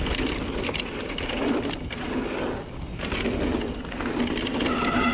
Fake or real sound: real